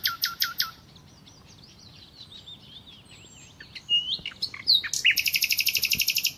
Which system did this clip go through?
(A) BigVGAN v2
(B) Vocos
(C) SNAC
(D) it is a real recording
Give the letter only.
D